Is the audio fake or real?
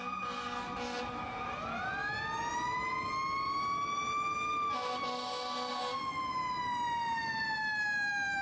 real